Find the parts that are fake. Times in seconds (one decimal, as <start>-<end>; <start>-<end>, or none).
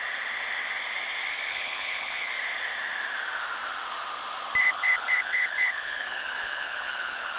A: 1.5-2.3; 4.6-7.4